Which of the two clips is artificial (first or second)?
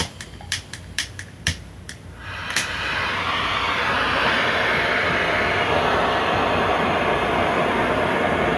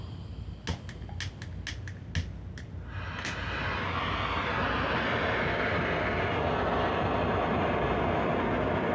first